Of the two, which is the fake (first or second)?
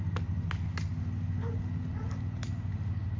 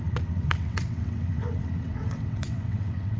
second